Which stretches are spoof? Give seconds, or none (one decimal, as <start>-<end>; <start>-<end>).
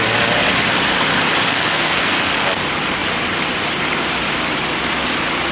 1.5-2.6